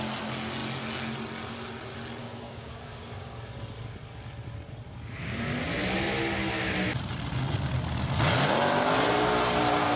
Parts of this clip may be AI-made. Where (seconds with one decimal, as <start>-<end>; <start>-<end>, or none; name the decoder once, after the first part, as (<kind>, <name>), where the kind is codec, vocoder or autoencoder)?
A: 2.2-3.4 (codec, DAC)